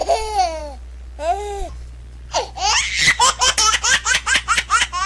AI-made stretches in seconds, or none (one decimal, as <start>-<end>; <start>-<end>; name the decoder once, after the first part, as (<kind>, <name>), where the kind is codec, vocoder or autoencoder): none